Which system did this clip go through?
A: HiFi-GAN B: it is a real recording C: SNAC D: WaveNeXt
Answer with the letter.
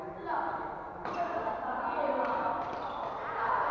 B